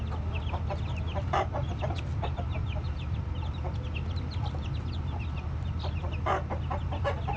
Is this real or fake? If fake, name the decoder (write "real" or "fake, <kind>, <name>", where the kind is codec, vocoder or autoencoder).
real